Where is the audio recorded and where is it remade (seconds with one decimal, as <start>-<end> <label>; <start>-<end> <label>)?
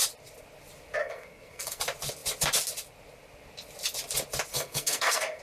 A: 0.0-1.0 recorded; 1.0-1.8 remade; 1.8-4.5 recorded; 4.5-5.4 remade